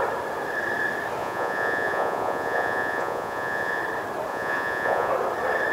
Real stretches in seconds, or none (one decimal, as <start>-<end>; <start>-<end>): 0.0-1.2; 3.8-4.3; 5.1-5.7